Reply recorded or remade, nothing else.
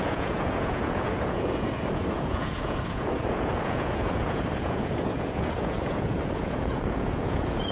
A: remade